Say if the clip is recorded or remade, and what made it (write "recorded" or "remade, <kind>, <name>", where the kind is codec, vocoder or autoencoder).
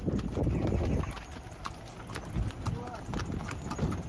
recorded